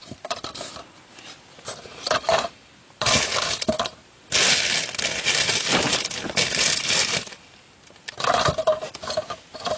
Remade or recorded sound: recorded